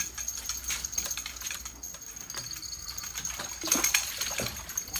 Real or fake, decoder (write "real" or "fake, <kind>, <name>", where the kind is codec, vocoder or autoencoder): real